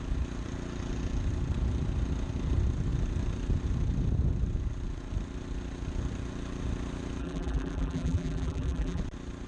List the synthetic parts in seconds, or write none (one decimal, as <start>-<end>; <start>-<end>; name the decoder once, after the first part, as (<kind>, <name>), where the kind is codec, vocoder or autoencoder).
7.2-9.0 (vocoder, BigVGAN v2)